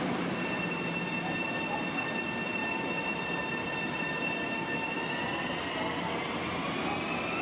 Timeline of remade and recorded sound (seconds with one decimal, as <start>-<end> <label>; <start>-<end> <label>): 0.0-7.4 recorded